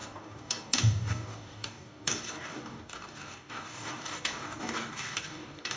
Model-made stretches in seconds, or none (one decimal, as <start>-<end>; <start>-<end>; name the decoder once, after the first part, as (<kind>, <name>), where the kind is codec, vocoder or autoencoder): 0.0-5.8 (codec, DAC)